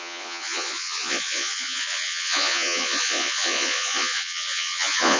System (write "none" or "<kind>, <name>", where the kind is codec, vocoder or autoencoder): vocoder, Vocos